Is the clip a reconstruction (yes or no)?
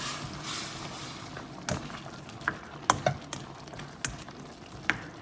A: no